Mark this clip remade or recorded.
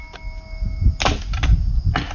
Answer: recorded